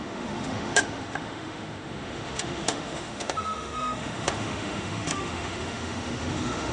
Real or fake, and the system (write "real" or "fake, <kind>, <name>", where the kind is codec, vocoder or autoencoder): fake, autoencoder, DAC-VAE